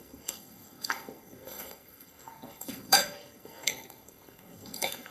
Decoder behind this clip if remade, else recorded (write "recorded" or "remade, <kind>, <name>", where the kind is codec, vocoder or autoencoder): remade, codec, SNAC